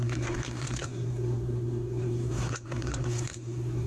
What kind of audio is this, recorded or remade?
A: remade